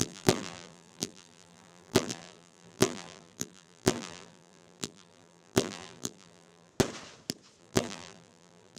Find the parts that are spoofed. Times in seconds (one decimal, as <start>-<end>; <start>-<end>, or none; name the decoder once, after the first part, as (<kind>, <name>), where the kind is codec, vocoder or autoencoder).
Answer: 0.0-6.7 (vocoder, BigVGAN v2); 7.6-8.8